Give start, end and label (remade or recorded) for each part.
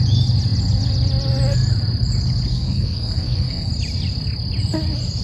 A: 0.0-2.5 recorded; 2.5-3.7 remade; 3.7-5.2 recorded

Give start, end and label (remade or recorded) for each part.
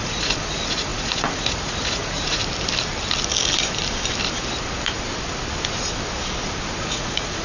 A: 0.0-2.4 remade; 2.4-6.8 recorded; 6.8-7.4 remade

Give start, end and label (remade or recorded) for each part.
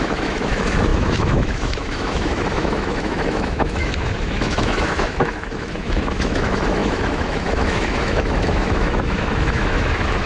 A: 0.0-10.3 remade